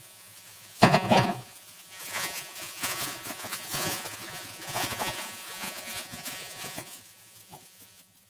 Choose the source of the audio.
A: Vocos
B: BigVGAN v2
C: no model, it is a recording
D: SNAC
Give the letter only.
A